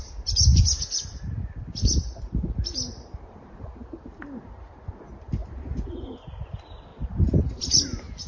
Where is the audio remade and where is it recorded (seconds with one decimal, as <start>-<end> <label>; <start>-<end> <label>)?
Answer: 0.0-8.3 remade